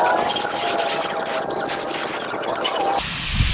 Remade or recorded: recorded